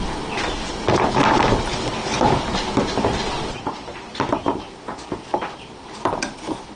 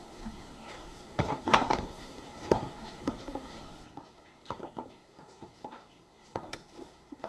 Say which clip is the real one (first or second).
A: first